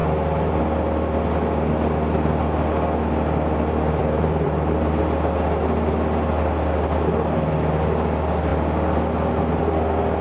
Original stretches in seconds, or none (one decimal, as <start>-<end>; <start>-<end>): 0.0-4.0; 5.0-10.2